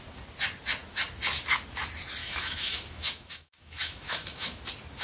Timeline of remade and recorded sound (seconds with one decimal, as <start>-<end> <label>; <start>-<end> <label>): 0.0-2.2 recorded; 2.2-4.6 remade; 4.6-5.0 recorded